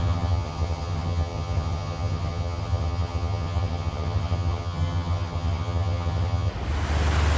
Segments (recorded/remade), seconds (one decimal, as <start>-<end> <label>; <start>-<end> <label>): 0.0-6.5 remade; 6.5-7.4 recorded

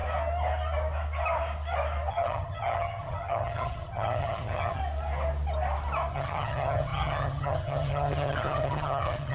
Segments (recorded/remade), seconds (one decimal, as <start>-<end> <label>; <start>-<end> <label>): 0.0-2.1 recorded; 2.1-4.8 remade; 4.8-6.1 recorded; 6.1-9.3 remade

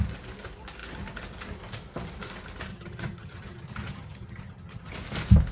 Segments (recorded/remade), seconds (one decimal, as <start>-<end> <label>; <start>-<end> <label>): 0.0-2.7 recorded; 2.7-4.9 remade; 4.9-5.5 recorded

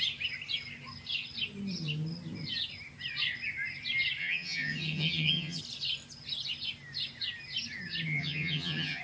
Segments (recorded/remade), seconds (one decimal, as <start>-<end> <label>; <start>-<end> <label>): 0.0-4.2 recorded; 4.2-5.6 remade; 5.6-8.2 recorded; 8.2-9.0 remade